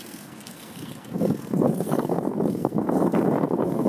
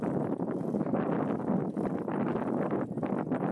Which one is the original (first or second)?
second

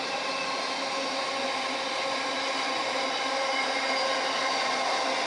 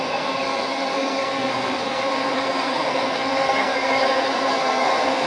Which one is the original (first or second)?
first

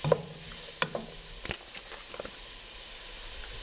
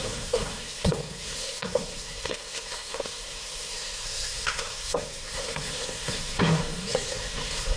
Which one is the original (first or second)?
first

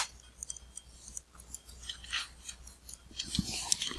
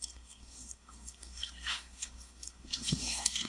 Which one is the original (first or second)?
first